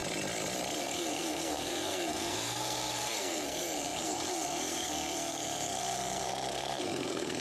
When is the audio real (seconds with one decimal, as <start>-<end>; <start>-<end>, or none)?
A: 0.0-0.8